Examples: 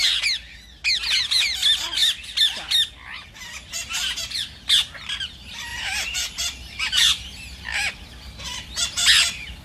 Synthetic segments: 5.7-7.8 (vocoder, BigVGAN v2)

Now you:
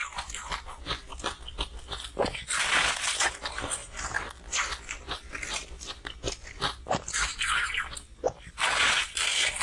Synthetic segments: none

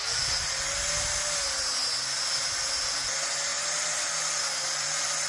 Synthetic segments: none

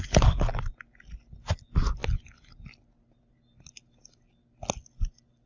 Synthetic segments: none